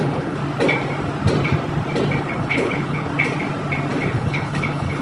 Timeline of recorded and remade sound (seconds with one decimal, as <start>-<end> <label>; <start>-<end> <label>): 0.0-0.4 remade; 0.4-2.2 recorded; 2.2-3.1 remade; 3.1-4.0 recorded; 4.0-5.0 remade